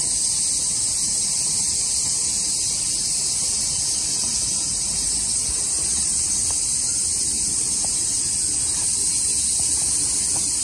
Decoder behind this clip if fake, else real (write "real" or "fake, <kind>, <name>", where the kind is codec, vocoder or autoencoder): real